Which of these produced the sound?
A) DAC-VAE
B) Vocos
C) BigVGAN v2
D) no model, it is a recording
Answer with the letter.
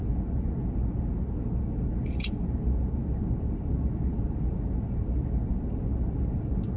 D